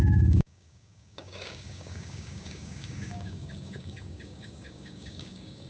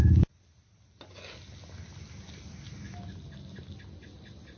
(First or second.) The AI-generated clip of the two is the first